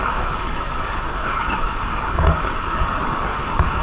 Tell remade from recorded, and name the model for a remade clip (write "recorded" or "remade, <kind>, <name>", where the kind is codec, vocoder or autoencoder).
remade, codec, DAC